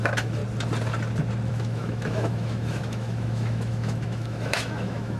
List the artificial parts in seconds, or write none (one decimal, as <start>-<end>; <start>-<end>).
0.0-0.4; 1.5-5.2